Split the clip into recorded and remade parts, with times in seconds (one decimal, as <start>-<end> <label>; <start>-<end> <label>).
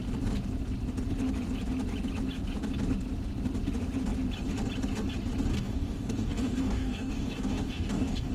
0.0-5.5 recorded; 5.5-8.3 remade